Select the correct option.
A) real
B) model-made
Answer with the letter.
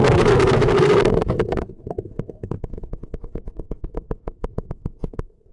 B